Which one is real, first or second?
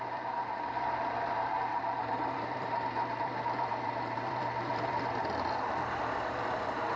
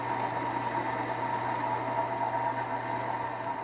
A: second